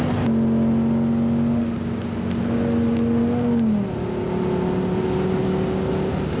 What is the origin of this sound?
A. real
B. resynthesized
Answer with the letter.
A